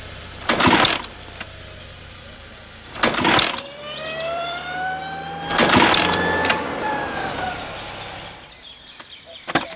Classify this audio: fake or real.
fake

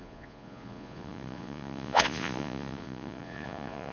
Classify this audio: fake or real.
fake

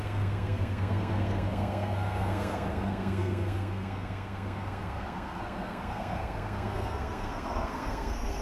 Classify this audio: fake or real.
fake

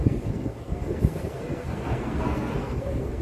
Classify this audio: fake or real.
fake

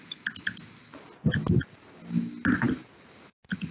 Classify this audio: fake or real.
real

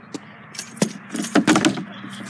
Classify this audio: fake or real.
real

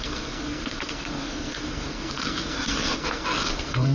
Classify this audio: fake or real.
fake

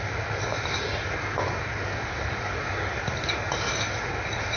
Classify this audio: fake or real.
real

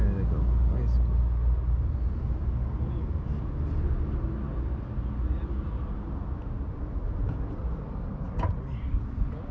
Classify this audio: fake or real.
real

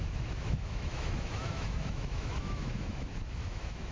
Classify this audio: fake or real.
fake